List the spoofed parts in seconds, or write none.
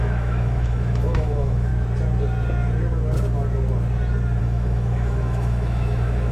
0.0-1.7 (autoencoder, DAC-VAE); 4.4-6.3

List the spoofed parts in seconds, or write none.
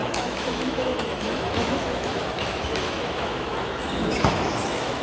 0.0-5.0 (autoencoder, DAC-VAE)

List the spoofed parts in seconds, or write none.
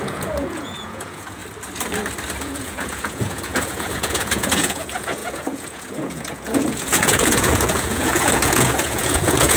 0.0-1.4 (vocoder, Vocos); 2.4-9.6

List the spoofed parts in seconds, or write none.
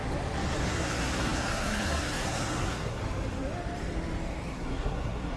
0.6-3.0 (codec, SNAC); 4.5-5.4